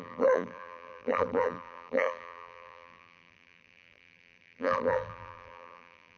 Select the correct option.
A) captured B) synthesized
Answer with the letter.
B